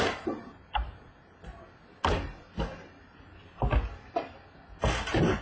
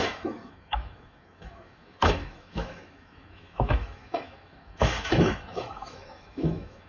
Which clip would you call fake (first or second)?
second